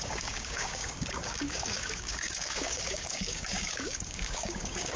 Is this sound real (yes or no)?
no